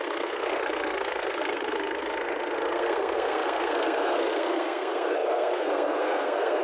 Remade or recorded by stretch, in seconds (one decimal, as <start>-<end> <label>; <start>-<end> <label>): 0.0-6.6 remade